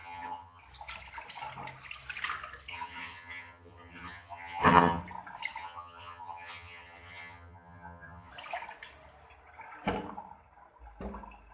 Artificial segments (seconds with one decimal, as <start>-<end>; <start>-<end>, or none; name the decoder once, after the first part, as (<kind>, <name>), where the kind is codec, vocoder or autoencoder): 0.0-0.6 (vocoder, HiFi-GAN); 2.7-5.0; 5.6-8.3